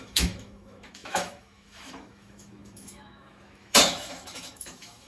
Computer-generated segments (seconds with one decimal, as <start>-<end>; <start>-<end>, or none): 0.0-5.1